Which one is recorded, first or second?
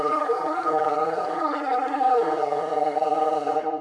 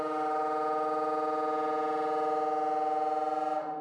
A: second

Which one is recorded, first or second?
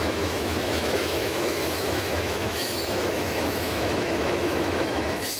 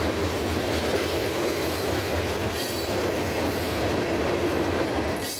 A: second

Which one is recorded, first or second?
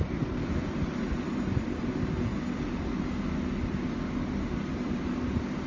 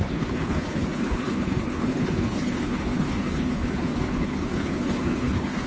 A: first